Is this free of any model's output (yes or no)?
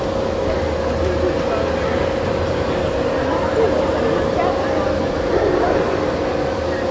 yes